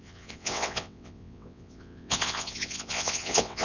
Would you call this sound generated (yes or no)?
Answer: yes